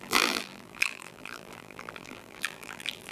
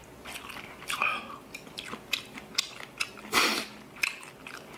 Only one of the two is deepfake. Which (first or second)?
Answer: first